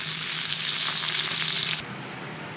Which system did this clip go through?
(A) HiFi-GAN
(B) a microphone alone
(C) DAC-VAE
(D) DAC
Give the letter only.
B